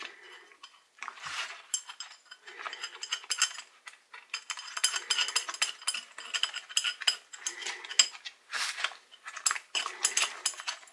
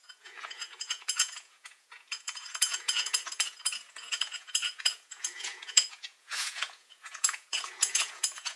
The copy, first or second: second